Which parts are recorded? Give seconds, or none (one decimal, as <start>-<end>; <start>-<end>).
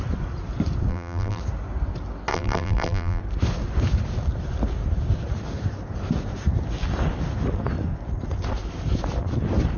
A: 0.0-0.9; 1.4-2.3; 3.2-9.8